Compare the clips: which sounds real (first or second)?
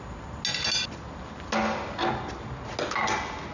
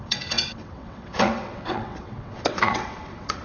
first